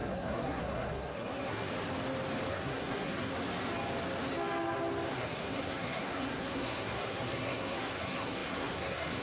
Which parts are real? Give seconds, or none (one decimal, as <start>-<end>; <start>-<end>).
1.7-2.5; 3.3-5.1